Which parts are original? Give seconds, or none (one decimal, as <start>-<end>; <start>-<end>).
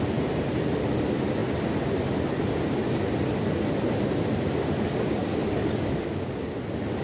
0.0-5.2; 6.4-7.0